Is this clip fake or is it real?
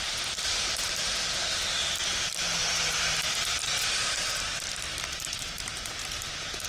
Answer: real